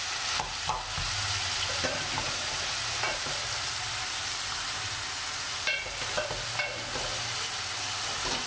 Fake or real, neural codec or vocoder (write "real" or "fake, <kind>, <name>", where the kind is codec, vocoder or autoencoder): real